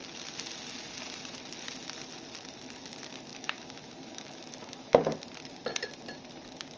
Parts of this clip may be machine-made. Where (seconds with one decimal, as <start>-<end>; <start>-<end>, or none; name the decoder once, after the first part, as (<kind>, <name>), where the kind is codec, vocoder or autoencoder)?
3.3-5.0 (autoencoder, DAC-VAE)